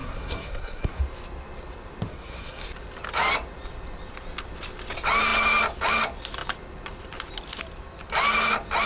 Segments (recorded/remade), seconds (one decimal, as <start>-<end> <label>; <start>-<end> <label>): 0.0-1.0 remade; 1.0-2.1 recorded; 2.1-2.6 remade; 2.6-8.9 recorded